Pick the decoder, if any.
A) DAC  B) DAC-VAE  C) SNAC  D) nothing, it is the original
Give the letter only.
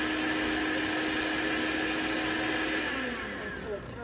D